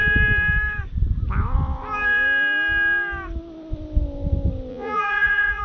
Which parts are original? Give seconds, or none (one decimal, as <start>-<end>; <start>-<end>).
0.0-4.7